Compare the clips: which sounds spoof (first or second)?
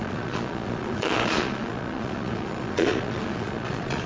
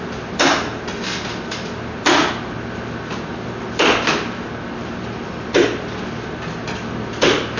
first